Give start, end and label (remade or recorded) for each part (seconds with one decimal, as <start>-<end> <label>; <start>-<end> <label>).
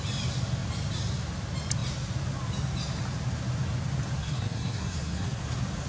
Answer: 0.0-4.2 recorded; 4.2-5.4 remade; 5.4-5.9 recorded